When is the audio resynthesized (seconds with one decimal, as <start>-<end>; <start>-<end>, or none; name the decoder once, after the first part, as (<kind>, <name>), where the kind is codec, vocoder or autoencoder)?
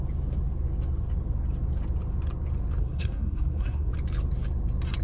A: 2.8-3.9 (codec, SNAC)